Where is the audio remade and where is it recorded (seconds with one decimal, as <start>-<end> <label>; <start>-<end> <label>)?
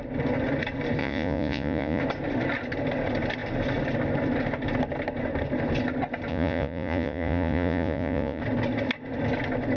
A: 0.0-1.0 recorded; 1.0-2.0 remade; 2.0-6.3 recorded; 6.3-8.4 remade; 8.4-9.8 recorded